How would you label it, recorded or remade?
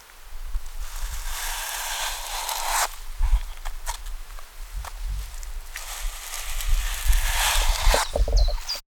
recorded